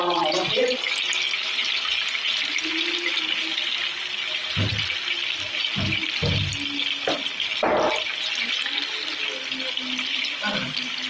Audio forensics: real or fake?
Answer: real